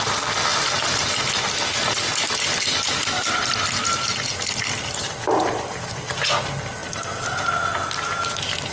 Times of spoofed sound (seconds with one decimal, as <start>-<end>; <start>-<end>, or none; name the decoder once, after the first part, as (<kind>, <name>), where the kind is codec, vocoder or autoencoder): none